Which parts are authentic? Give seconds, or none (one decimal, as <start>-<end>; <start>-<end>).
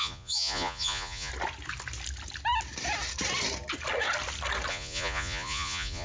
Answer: 1.3-4.7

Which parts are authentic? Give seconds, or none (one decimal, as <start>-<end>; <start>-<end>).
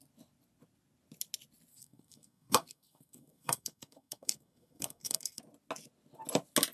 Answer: 0.0-1.7; 5.4-6.7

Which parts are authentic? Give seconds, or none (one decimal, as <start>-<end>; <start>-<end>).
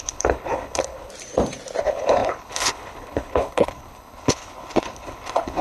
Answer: 1.1-1.8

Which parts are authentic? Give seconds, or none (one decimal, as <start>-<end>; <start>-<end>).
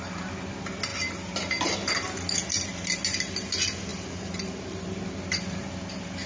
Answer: 0.0-6.3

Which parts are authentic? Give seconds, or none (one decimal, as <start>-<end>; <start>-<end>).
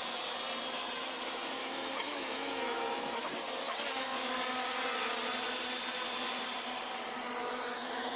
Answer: 0.0-1.6; 3.3-7.4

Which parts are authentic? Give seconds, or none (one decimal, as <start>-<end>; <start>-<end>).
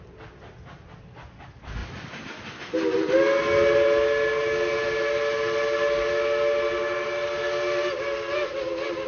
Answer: 0.0-9.1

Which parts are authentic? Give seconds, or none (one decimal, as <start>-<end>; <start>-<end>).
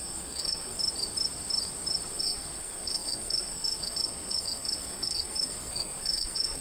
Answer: 0.8-2.1